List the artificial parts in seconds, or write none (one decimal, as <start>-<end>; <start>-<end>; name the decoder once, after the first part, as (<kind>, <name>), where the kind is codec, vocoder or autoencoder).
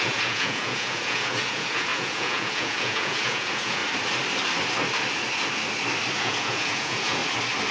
0.0-3.8 (vocoder, Vocos); 6.1-7.2